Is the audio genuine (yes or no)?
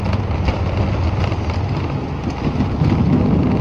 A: yes